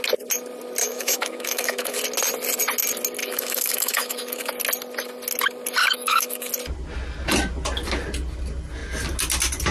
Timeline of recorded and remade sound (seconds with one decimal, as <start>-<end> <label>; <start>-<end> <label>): 0.0-0.8 recorded; 0.8-2.0 remade; 2.0-3.2 recorded; 3.2-4.5 remade; 4.5-5.8 recorded; 5.8-6.5 remade; 6.5-9.7 recorded